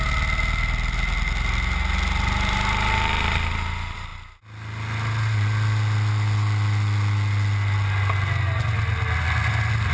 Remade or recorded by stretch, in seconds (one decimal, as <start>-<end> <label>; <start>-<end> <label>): 0.0-9.9 recorded